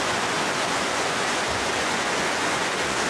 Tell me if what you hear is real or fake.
fake